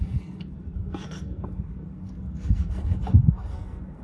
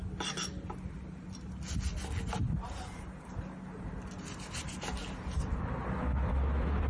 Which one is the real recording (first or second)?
second